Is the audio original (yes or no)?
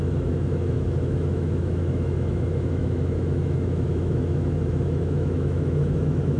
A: no